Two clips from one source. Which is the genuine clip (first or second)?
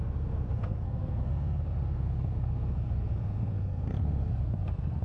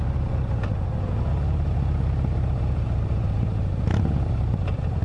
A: second